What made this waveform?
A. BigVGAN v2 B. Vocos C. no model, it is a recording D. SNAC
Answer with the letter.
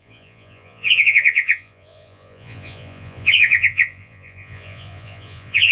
B